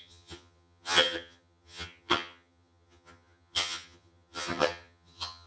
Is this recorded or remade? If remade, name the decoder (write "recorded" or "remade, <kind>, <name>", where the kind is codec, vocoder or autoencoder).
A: remade, vocoder, HiFi-GAN